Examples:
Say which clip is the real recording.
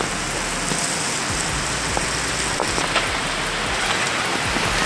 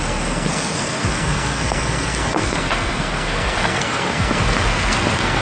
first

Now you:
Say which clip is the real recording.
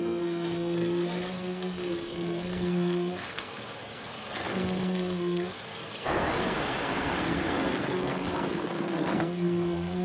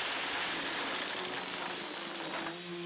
second